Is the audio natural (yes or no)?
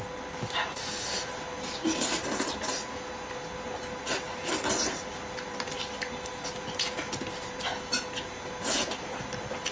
yes